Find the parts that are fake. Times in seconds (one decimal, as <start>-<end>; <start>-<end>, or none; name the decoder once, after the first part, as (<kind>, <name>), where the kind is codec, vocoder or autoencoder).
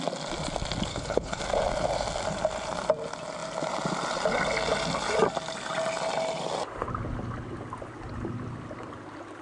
0.9-1.4 (codec, HILCodec)